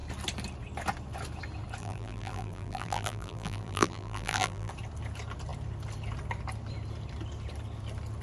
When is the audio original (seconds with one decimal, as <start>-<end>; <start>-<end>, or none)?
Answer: 0.0-1.8; 4.7-8.2